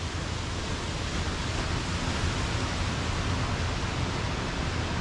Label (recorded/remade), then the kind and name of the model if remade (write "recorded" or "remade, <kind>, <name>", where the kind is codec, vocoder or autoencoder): recorded